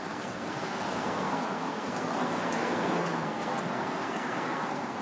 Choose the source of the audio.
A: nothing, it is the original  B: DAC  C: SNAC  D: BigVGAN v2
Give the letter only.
C